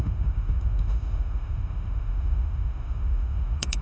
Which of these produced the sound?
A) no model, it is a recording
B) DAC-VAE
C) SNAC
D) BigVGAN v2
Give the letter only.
B